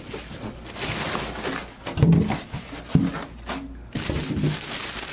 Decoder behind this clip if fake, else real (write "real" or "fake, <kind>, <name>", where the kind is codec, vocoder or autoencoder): real